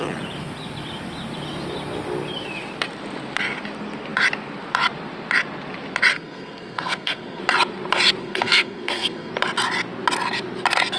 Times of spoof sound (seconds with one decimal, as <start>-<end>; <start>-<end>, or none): 6.1-7.4; 8.2-9.3